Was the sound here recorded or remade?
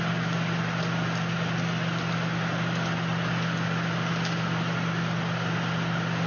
recorded